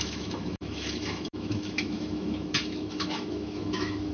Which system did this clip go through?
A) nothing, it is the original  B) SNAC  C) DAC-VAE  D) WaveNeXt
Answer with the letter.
C